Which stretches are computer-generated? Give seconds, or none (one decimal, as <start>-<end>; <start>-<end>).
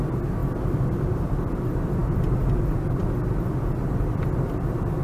none